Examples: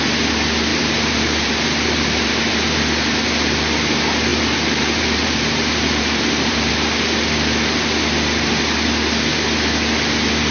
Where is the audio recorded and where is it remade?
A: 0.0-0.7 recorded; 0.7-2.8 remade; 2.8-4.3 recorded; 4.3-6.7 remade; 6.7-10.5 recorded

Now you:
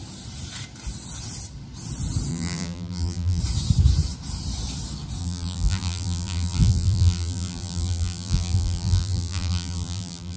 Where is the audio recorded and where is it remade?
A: 0.0-2.3 recorded; 2.3-3.4 remade; 3.4-5.2 recorded; 5.2-10.4 remade

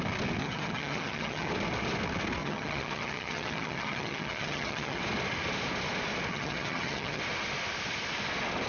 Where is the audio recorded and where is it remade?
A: 0.0-0.4 recorded; 0.4-1.5 remade; 1.5-2.4 recorded; 2.4-5.0 remade; 5.0-6.3 recorded; 6.3-7.2 remade; 7.2-8.7 recorded

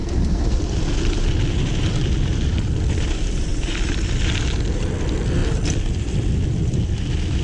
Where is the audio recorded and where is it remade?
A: 0.0-0.6 remade; 0.6-7.4 recorded

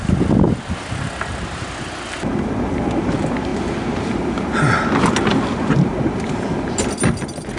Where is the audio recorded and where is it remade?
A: 0.0-7.6 recorded